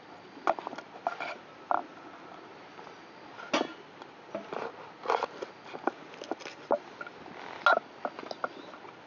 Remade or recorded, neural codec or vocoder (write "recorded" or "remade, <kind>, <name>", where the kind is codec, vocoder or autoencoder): recorded